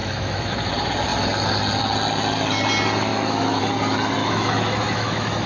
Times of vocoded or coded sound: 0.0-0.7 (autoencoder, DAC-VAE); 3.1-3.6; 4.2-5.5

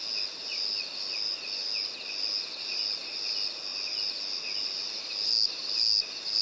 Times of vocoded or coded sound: none

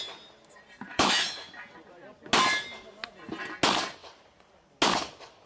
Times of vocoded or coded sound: 0.9-1.5 (autoencoder, DAC-VAE)

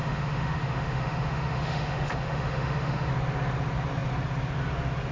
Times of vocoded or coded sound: 0.0-3.1 (autoencoder, DAC-VAE)

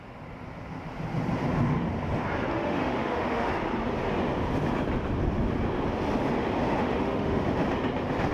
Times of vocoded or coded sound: 2.5-3.5 (autoencoder, DAC-VAE); 6.8-7.4

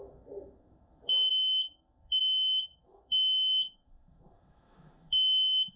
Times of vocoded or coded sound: 0.0-5.8 (autoencoder, DAC-VAE)